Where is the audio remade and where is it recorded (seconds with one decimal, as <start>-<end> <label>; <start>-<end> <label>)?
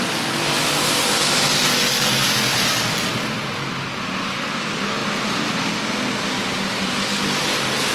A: 0.0-7.9 recorded